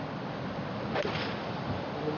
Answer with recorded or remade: recorded